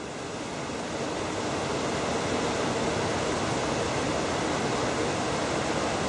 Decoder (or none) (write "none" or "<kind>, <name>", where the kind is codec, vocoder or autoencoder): none